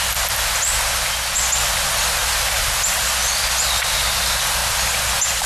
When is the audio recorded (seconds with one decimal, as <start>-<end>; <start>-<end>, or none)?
0.0-2.2; 3.0-5.5